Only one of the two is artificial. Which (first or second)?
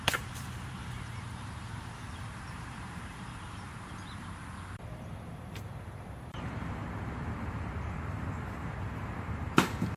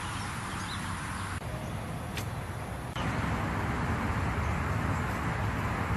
first